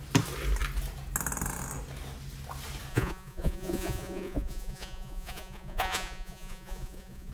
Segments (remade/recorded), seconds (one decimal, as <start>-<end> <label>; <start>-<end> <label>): 0.0-2.9 recorded; 2.9-7.3 remade